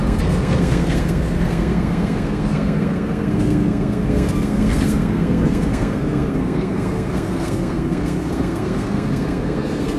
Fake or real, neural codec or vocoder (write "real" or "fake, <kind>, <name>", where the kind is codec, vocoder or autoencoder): fake, codec, SNAC